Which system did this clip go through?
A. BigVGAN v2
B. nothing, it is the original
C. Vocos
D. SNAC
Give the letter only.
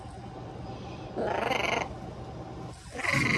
B